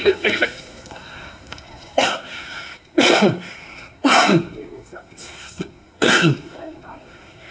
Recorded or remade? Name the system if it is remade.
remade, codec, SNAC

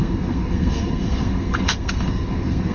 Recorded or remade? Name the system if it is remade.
remade, codec, SNAC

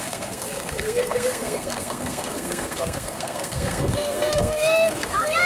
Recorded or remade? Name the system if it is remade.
remade, codec, SNAC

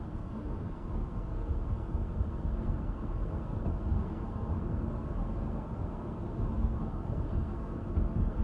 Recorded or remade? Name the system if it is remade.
remade, codec, SNAC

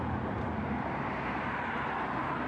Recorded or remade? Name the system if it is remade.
recorded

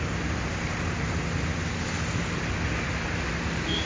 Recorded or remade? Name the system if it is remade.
recorded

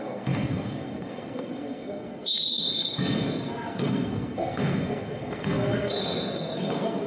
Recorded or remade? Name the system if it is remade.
remade, codec, SNAC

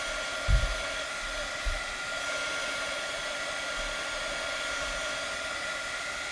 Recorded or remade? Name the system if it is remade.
recorded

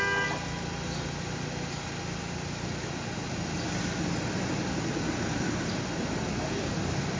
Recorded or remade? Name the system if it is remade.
recorded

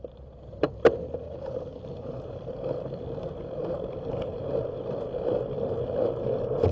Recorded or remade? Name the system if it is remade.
recorded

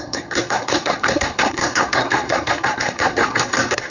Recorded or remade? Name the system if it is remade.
remade, codec, SNAC